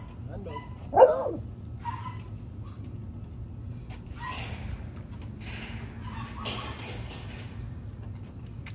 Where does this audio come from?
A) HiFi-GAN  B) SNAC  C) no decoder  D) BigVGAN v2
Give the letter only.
C